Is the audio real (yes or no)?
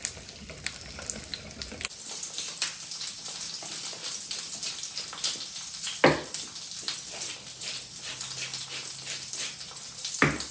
yes